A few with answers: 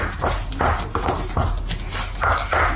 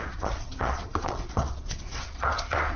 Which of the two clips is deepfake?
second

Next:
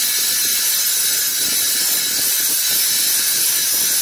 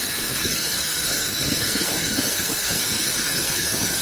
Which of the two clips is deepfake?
second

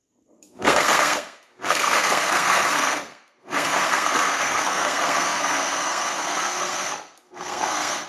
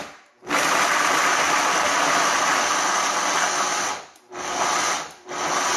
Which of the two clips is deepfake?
first